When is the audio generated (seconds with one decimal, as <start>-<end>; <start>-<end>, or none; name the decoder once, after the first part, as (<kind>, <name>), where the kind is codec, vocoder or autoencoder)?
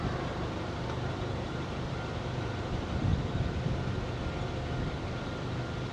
0.0-3.1 (vocoder, BigVGAN v2)